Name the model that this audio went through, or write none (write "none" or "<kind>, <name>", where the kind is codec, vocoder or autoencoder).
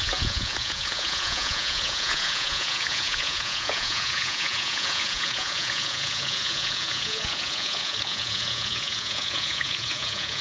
vocoder, Vocos